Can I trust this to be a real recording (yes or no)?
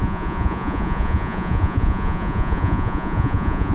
no